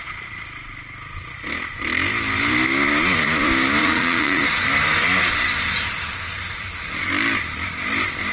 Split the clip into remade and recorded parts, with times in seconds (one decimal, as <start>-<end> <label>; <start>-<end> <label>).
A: 0.0-3.8 recorded; 3.8-4.4 remade; 4.4-8.3 recorded